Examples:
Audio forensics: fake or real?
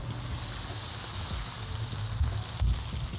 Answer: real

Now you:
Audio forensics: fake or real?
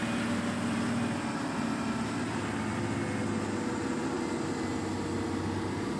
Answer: real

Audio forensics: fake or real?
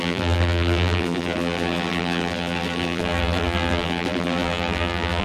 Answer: fake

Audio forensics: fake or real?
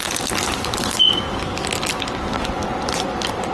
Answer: real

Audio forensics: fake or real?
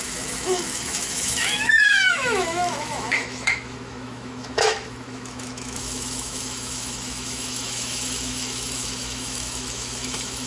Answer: fake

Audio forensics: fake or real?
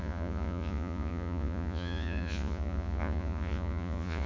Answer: fake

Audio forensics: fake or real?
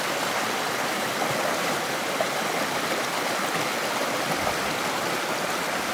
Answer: real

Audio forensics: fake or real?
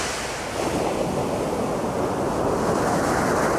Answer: real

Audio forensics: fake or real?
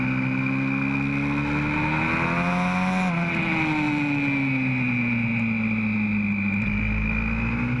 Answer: real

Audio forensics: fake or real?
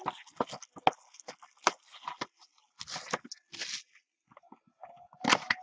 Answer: real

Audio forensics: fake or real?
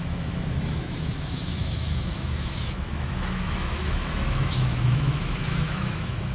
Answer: fake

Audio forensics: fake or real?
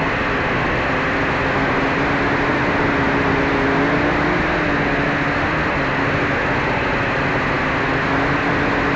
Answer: real